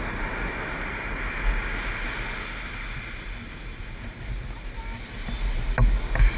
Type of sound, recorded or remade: recorded